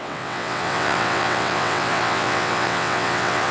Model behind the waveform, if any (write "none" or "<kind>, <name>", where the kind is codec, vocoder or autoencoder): vocoder, WaveNeXt